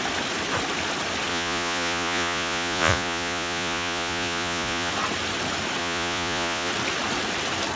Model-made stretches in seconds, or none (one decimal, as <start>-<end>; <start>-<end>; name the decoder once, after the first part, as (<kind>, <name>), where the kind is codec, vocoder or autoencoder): 1.3-4.9 (vocoder, Vocos); 5.8-6.7